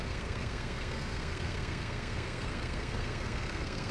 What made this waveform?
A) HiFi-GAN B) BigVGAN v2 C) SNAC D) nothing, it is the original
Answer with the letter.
C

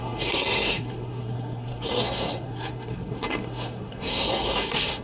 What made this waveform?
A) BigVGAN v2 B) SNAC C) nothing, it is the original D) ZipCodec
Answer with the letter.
B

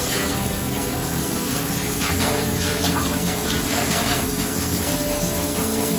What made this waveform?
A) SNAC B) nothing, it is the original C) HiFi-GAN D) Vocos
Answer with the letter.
A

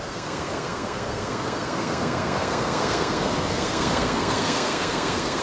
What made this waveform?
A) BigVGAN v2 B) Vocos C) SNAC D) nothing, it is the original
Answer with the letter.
C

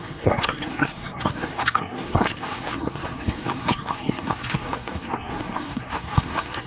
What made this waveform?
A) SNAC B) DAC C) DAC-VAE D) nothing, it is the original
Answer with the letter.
A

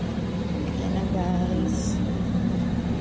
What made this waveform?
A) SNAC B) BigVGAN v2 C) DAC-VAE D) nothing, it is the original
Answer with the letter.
D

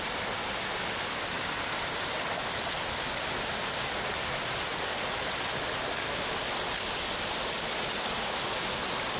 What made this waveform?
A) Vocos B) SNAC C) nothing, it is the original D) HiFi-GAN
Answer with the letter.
C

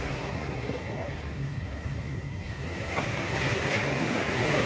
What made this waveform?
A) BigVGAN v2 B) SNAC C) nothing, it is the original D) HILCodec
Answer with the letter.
B